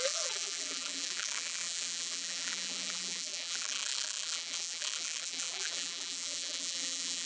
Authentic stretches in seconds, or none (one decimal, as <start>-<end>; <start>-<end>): none

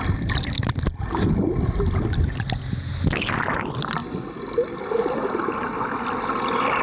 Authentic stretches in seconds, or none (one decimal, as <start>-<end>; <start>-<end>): 0.0-6.8

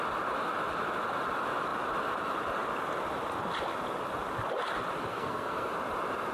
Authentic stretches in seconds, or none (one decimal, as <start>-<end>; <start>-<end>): 0.0-5.1; 5.7-6.3

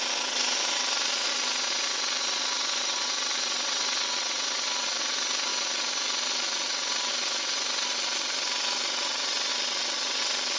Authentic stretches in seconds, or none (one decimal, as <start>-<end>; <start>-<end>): 0.0-10.6

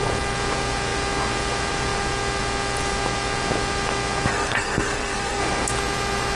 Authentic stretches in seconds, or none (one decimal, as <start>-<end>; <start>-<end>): 0.0-4.3; 5.4-6.4